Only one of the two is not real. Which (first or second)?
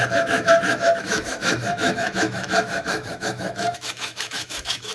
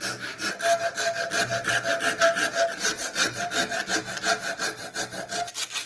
first